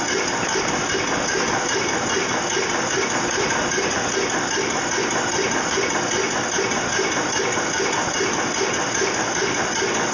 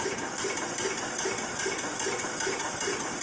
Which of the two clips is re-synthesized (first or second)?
second